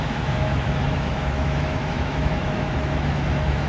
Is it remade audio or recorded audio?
remade